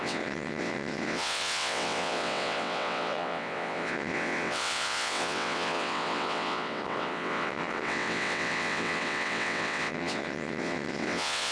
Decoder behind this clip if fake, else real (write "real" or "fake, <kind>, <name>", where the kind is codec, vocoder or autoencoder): fake, vocoder, WaveNeXt